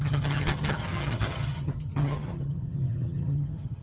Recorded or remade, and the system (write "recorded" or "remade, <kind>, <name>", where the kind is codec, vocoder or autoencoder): remade, vocoder, HiFi-GAN